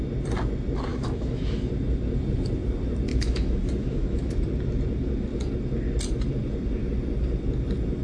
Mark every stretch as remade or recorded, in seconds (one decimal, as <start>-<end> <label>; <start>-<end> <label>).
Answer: 0.0-0.9 recorded; 0.9-1.7 remade; 1.7-3.1 recorded; 3.1-4.3 remade; 4.3-8.0 recorded